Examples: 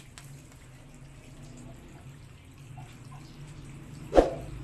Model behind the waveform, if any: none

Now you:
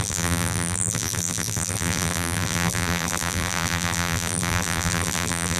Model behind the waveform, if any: vocoder, BigVGAN v2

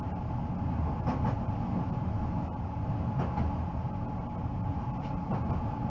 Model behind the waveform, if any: none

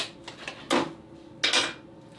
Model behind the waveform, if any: none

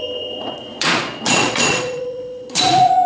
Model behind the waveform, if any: vocoder, Vocos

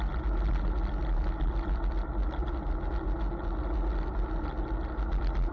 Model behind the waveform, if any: none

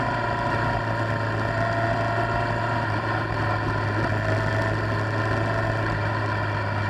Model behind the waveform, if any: none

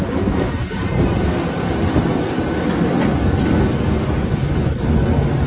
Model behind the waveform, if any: none